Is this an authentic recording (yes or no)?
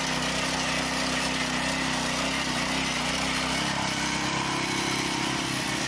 yes